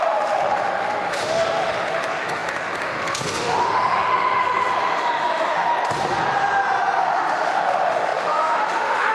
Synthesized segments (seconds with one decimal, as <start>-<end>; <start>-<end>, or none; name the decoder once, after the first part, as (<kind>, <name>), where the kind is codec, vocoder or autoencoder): 0.0-5.7 (autoencoder, DAC-VAE); 7.0-9.1